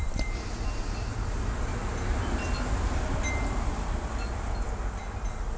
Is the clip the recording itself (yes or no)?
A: yes